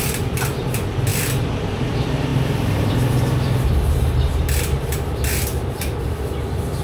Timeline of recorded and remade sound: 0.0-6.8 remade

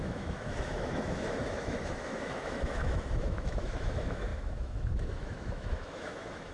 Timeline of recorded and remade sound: 0.0-6.5 remade

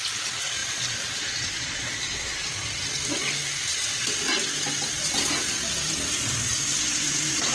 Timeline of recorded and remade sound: 0.0-0.6 recorded; 0.6-2.5 remade; 2.5-7.5 recorded

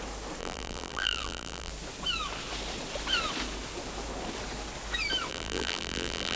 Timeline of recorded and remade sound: 0.0-0.4 recorded; 0.4-1.7 remade; 1.7-5.3 recorded; 5.3-6.4 remade

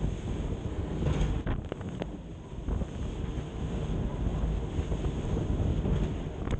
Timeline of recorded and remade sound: 0.0-0.7 recorded; 0.7-1.3 remade; 1.3-6.6 recorded

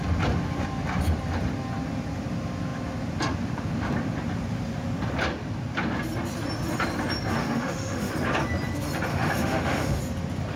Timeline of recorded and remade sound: 0.0-7.4 recorded; 7.4-8.1 remade; 8.1-9.1 recorded; 9.1-10.0 remade; 10.0-10.6 recorded

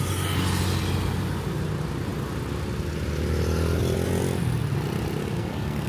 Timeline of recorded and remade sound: 0.0-5.2 recorded; 5.2-5.9 remade

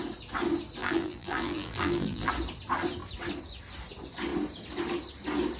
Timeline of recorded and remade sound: 0.0-0.8 recorded; 0.8-2.3 remade; 2.3-5.6 recorded